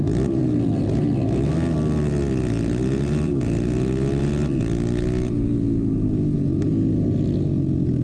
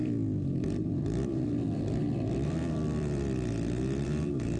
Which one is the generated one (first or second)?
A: second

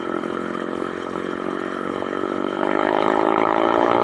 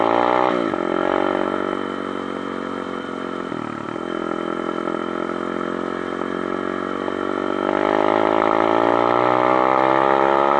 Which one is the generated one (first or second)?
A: first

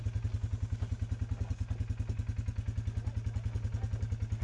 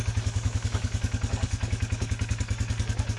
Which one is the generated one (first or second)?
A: second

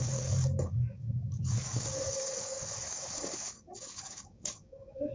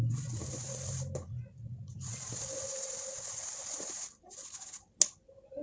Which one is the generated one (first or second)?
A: first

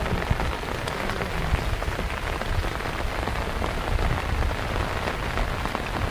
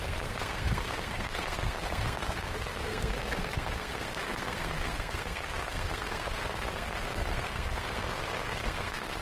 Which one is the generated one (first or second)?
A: second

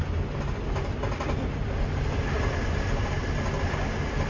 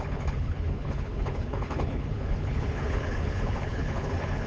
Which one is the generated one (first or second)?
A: second